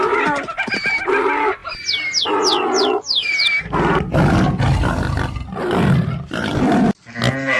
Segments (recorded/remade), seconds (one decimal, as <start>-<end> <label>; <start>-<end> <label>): 0.0-7.6 recorded